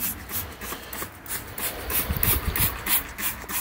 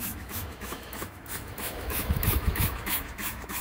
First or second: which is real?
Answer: first